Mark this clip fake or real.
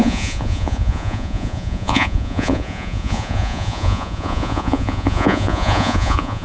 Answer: fake